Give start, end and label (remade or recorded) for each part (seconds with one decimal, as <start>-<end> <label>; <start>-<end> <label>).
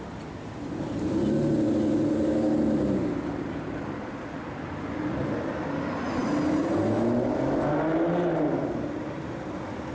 0.0-9.9 recorded